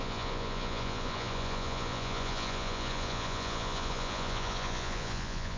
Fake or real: fake